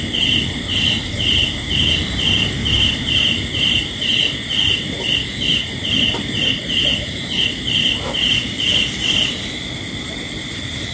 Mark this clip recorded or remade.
remade